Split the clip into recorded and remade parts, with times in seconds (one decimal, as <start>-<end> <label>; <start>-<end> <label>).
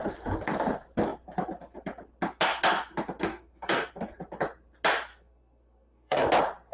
0.0-3.3 recorded; 3.3-3.9 remade; 3.9-5.1 recorded; 5.1-6.3 remade; 6.3-6.7 recorded